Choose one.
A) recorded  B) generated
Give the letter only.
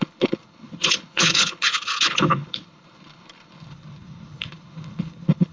B